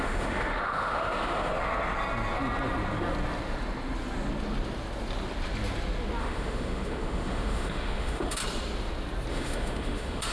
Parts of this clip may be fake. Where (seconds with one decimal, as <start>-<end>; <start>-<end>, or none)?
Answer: 0.0-1.5; 6.2-8.4; 9.3-10.3